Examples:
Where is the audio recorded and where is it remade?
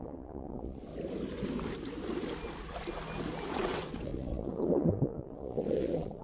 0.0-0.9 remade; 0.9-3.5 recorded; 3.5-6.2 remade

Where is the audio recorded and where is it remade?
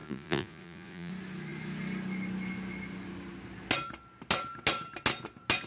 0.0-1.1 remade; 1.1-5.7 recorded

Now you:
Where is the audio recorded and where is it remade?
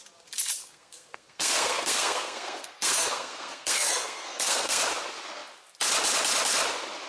0.0-0.6 recorded; 0.6-4.8 remade; 4.8-7.1 recorded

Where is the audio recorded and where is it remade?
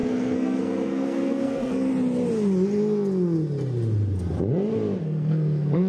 0.0-1.9 remade; 1.9-5.0 recorded; 5.0-5.9 remade